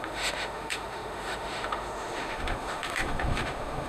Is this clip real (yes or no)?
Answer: no